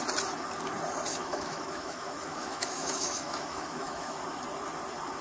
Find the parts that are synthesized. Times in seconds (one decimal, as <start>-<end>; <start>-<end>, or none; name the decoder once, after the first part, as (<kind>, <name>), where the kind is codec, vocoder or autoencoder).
1.1-4.2 (autoencoder, DAC-VAE)